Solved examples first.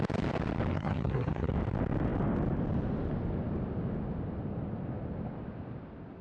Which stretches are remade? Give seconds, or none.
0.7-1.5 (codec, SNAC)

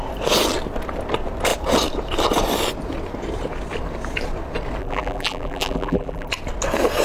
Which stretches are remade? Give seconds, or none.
4.8-6.3 (vocoder, BigVGAN v2)

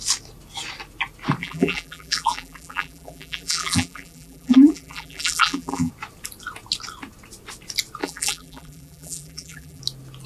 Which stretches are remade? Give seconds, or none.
1.4-5.9 (vocoder, BigVGAN v2); 8.0-9.8

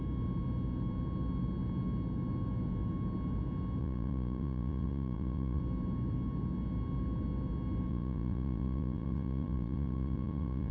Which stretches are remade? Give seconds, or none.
3.8-5.6 (vocoder, Vocos); 7.9-10.7

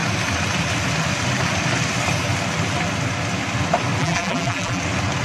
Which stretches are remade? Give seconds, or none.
4.0-4.8 (vocoder, BigVGAN v2)

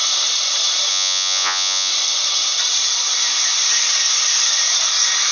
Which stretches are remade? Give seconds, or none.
0.9-1.9 (vocoder, Vocos)